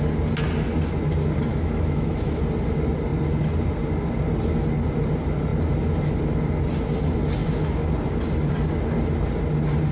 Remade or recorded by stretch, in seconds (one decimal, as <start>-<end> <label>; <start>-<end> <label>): 0.0-1.5 recorded; 1.5-2.4 remade; 2.4-9.9 recorded